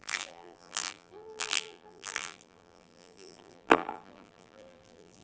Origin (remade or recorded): remade